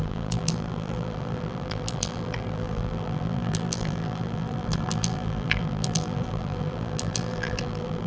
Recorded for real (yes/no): no